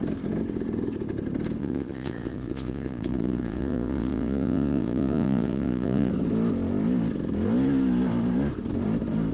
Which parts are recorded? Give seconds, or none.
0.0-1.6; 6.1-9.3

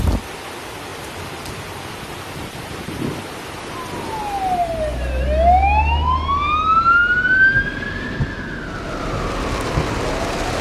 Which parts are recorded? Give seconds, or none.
0.0-10.6

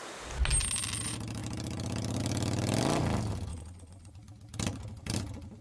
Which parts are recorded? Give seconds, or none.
0.0-3.5; 4.1-5.6

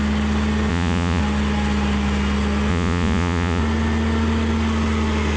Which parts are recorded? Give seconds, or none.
0.0-0.7; 1.2-2.7; 3.6-5.4